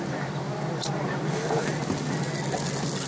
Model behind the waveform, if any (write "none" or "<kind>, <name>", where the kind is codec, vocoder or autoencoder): none